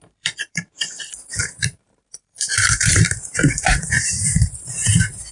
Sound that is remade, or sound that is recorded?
remade